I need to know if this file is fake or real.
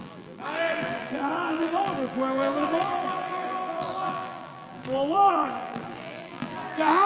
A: fake